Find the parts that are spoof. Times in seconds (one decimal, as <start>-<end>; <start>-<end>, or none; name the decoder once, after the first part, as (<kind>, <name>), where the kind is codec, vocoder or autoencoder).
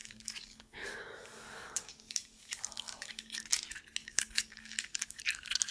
0.0-3.4 (codec, DAC); 4.0-5.2